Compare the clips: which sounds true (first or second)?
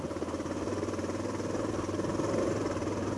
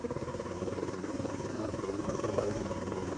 first